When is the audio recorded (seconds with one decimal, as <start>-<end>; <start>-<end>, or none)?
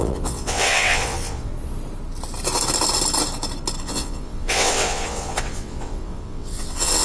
1.5-3.8